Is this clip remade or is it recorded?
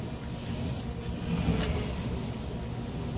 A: recorded